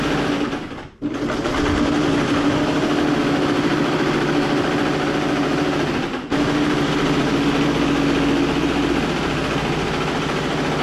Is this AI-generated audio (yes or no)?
no